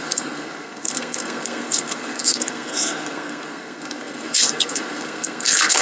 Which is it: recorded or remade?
remade